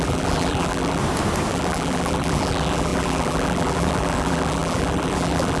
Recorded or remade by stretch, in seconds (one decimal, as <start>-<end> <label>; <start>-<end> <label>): 0.0-1.0 remade; 1.0-1.5 recorded; 1.5-5.6 remade